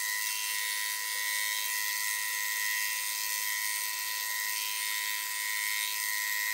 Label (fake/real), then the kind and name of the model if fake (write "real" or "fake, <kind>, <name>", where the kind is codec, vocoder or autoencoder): real